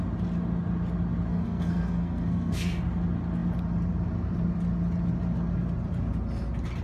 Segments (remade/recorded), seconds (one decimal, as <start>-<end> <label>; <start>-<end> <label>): 0.0-1.3 recorded; 1.3-2.8 remade; 2.8-6.8 recorded